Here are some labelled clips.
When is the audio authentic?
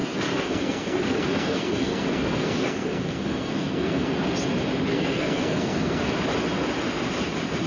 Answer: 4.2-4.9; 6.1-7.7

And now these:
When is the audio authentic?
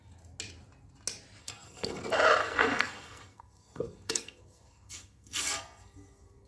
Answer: 0.0-1.4; 2.0-2.4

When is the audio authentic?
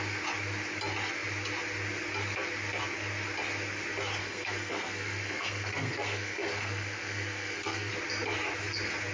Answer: 0.0-4.2; 7.9-9.1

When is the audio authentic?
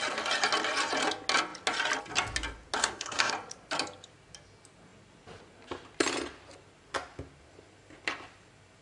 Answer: 0.0-2.8; 3.3-8.8